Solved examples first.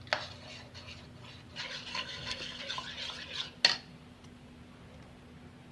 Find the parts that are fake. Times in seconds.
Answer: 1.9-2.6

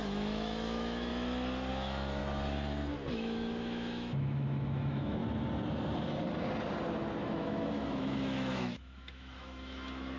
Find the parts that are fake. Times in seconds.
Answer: 0.0-1.1; 1.7-2.2; 3.1-5.2; 7.2-10.2

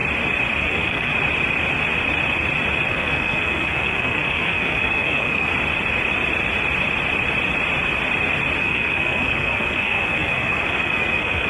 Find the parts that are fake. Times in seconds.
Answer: 0.6-1.1; 2.9-5.5; 8.6-11.5

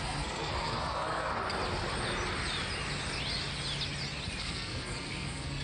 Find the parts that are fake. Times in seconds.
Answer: 0.0-1.3; 4.4-5.6

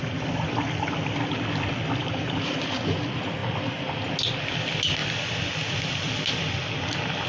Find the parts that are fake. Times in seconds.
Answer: 2.0-2.8

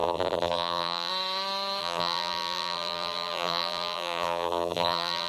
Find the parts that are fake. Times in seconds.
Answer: 0.0-1.1; 1.8-5.3